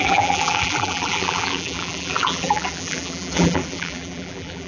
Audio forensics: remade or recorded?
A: remade